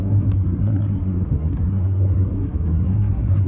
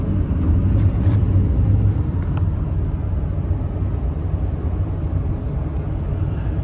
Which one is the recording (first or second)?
second